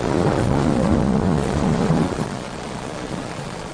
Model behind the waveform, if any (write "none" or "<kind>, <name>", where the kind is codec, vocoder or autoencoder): vocoder, Vocos